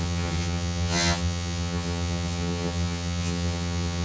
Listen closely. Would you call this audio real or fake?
fake